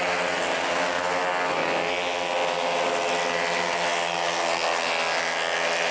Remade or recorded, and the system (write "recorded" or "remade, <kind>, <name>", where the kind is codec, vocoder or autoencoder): recorded